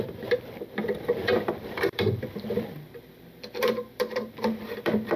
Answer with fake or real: fake